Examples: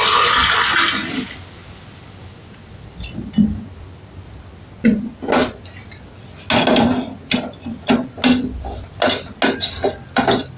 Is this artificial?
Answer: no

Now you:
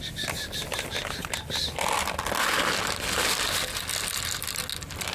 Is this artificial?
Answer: no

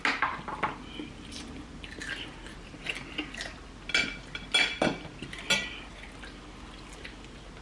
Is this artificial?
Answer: no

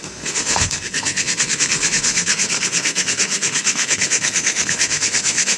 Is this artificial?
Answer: yes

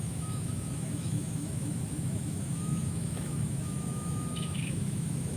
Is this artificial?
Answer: yes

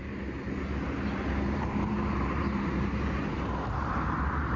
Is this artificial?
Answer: yes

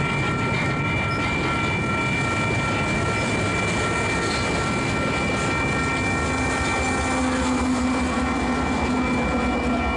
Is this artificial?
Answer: no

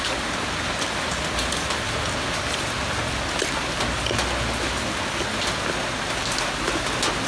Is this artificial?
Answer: no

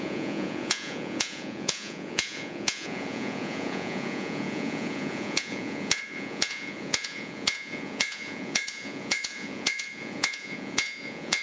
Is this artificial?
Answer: yes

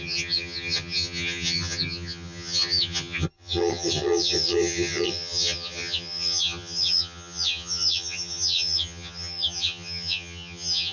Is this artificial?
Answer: yes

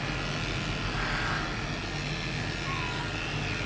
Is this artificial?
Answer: no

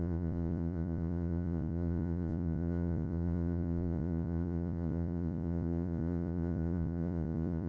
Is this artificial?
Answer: yes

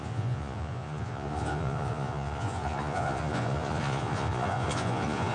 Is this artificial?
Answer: yes